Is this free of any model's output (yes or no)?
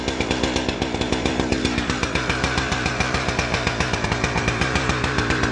no